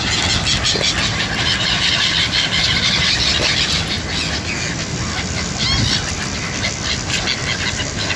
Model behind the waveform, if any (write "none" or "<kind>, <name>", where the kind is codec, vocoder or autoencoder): none